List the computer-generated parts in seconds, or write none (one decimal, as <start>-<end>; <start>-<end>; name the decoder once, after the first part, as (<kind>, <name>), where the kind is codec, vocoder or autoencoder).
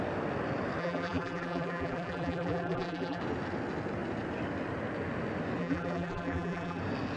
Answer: 0.8-3.2 (vocoder, BigVGAN v2); 5.6-6.8